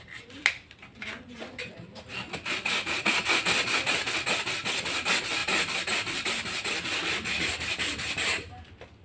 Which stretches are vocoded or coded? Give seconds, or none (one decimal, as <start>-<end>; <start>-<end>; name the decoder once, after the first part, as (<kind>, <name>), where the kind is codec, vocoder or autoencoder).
none